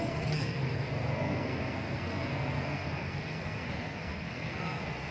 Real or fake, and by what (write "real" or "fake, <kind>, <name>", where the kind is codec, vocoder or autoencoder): fake, codec, SNAC